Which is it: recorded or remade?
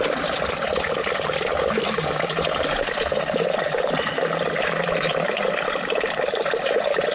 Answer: recorded